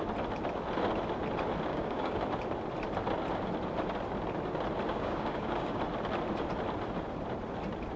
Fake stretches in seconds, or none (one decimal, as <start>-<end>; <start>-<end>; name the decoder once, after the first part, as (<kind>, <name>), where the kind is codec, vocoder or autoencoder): 1.7-2.2 (codec, DAC); 4.9-5.8